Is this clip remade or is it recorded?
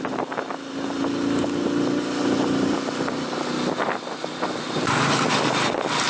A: recorded